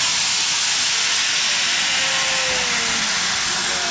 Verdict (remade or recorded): recorded